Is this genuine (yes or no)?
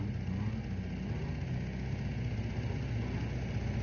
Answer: yes